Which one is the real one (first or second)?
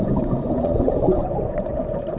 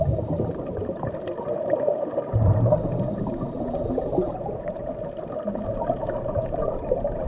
second